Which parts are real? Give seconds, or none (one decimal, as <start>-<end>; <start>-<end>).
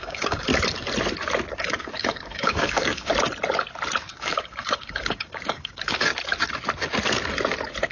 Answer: 0.5-1.6; 3.1-4.0; 6.1-7.9